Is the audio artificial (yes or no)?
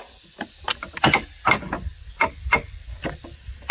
no